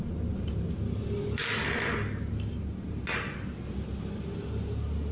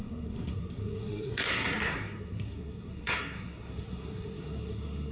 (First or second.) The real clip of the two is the first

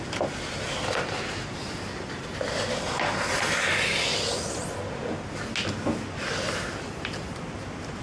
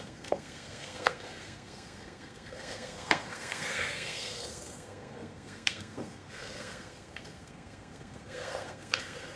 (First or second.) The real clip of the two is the first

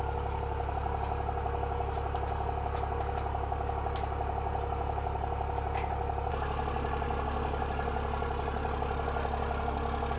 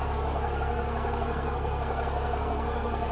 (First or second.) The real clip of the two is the first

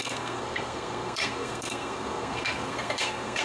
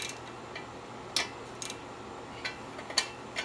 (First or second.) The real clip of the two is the second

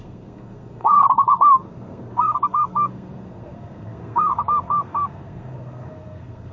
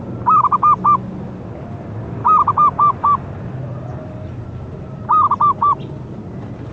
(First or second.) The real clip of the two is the second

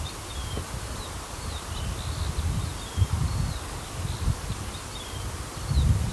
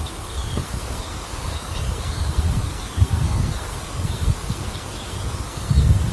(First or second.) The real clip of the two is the first